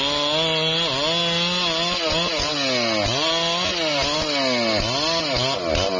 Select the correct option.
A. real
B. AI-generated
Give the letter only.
A